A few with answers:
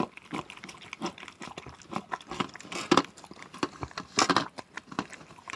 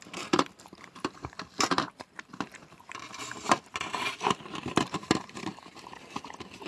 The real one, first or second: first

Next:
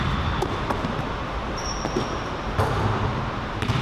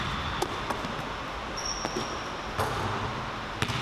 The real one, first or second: second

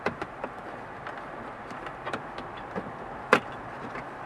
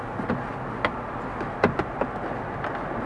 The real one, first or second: second